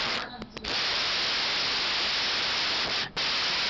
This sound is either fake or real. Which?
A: real